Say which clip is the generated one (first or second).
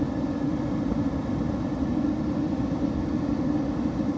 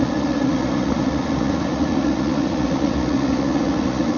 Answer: second